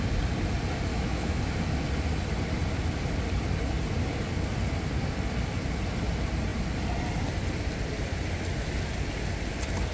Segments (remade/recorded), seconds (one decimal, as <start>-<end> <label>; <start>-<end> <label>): 0.0-0.9 recorded; 0.9-1.4 remade; 1.4-9.9 recorded